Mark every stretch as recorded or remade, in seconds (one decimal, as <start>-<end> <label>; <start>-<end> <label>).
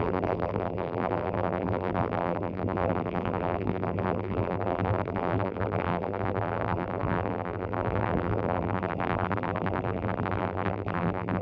0.0-11.4 remade